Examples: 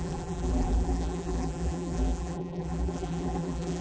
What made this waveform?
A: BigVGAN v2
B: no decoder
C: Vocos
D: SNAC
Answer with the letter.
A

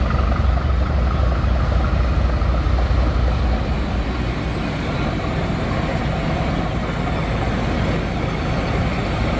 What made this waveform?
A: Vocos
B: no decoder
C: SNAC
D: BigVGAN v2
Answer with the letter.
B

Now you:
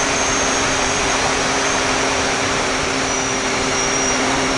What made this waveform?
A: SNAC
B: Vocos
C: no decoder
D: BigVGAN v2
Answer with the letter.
D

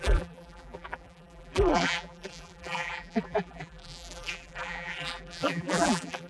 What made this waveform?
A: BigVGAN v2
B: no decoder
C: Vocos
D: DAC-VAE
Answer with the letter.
A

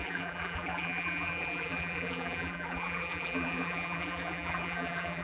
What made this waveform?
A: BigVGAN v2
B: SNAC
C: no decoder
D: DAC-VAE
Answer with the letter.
A